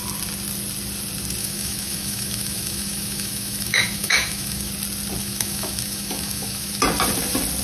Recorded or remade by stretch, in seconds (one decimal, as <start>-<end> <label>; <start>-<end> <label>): 0.0-1.4 recorded; 1.4-4.7 remade; 4.7-5.2 recorded; 5.2-6.8 remade; 6.8-7.6 recorded